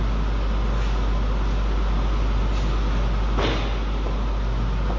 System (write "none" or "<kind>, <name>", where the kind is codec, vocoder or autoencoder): none